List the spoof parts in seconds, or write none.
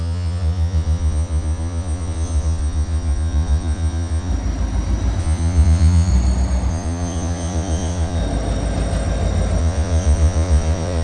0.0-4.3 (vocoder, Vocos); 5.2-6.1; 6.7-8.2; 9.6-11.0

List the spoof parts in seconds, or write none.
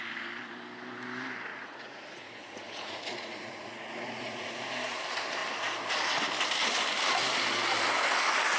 1.5-4.7 (vocoder, Vocos)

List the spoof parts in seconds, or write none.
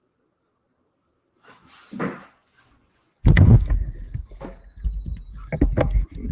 2.4-3.6 (vocoder, Vocos)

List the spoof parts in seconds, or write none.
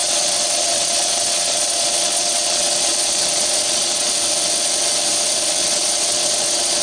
0.0-4.1 (vocoder, Vocos); 5.6-6.8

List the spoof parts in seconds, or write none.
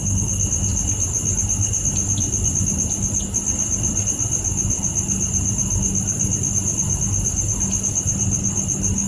none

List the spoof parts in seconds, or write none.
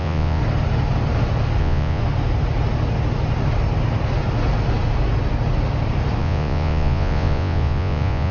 0.0-0.4 (vocoder, Vocos); 1.6-2.0; 6.2-8.3